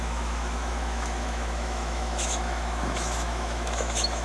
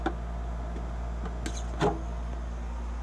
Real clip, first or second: second